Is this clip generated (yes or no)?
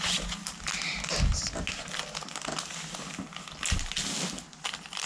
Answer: no